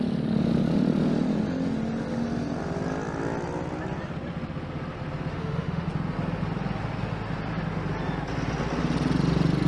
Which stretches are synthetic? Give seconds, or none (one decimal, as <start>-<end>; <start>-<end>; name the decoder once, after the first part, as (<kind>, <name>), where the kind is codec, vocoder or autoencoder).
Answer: 5.3-5.9 (autoencoder, DAC-VAE)